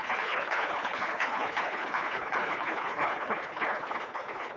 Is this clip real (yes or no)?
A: no